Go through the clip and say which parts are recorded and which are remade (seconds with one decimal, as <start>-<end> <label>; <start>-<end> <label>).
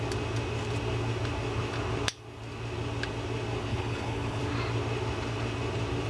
0.0-3.7 recorded; 3.7-4.4 remade; 4.4-6.1 recorded